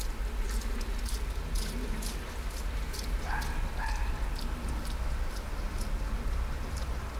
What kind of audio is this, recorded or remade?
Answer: recorded